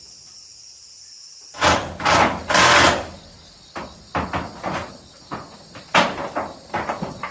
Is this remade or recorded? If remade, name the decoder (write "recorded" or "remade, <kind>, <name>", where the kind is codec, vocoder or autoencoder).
recorded